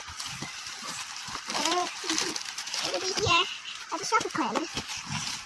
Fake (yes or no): no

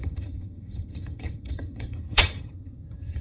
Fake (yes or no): yes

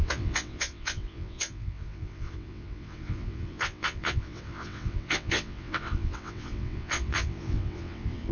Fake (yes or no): yes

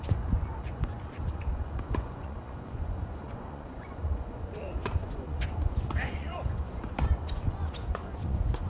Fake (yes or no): yes